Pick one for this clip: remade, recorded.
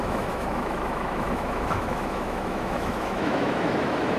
remade